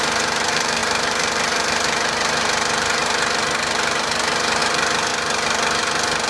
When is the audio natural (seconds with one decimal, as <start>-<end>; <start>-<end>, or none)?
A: 5.1-6.3